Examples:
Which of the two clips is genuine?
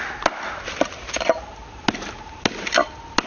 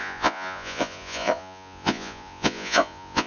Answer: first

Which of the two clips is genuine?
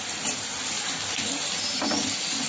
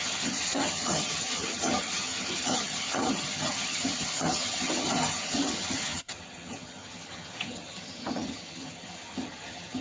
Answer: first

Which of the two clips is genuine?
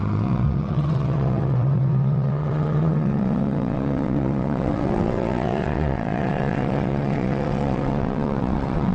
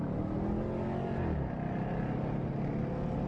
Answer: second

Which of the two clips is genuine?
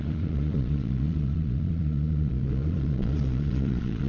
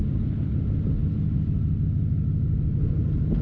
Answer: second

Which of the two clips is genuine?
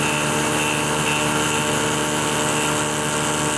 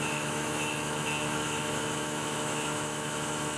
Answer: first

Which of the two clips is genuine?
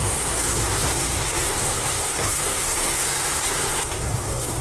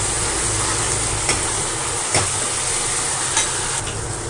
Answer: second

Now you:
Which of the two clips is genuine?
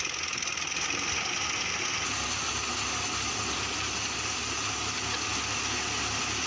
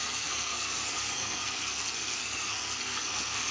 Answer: first